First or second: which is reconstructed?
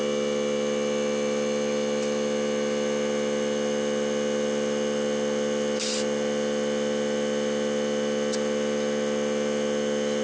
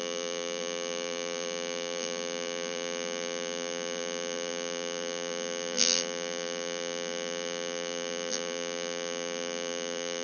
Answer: second